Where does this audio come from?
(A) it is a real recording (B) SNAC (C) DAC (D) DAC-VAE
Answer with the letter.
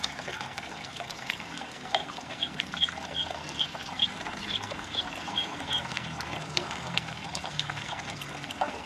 B